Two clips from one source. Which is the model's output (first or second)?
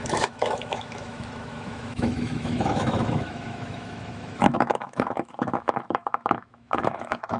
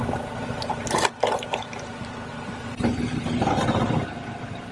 first